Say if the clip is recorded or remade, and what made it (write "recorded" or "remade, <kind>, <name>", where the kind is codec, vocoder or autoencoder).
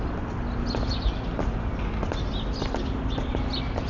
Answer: recorded